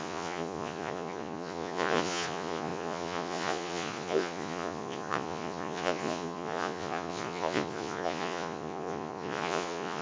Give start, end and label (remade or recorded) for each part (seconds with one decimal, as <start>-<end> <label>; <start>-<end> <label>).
0.0-10.0 remade